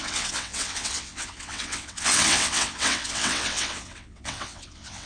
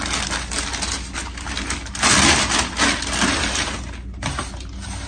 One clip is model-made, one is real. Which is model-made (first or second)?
first